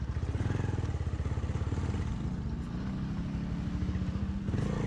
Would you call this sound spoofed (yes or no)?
no